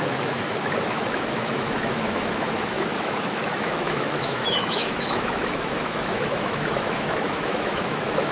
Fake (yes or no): yes